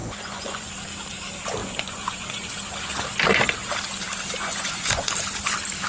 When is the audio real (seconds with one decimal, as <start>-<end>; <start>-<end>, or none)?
0.7-1.6; 2.5-4.4; 5.1-5.9